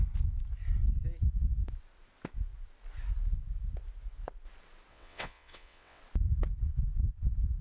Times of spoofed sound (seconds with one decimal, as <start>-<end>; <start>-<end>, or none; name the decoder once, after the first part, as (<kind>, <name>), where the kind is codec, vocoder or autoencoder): 4.9-6.0 (vocoder, WaveNeXt)